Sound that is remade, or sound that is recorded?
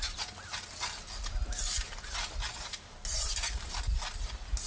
recorded